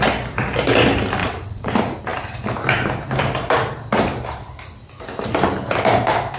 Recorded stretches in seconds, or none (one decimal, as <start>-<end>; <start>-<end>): 0.0-1.2; 1.7-6.4